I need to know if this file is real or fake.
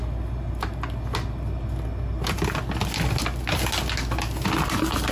real